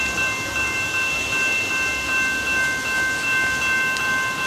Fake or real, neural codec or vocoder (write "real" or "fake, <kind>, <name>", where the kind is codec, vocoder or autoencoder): real